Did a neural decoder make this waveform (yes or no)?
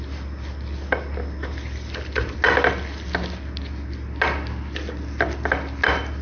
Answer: no